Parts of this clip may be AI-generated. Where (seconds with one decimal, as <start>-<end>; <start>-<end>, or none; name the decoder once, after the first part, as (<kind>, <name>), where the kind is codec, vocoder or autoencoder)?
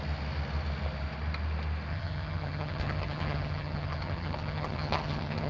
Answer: 1.9-5.5 (vocoder, HiFi-GAN)